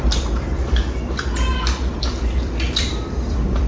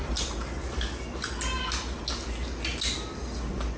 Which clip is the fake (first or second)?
first